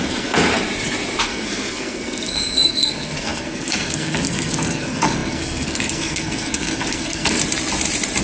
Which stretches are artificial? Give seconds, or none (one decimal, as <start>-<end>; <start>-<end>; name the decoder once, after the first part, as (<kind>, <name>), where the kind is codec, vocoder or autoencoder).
0.0-0.5 (codec, SNAC); 1.2-7.4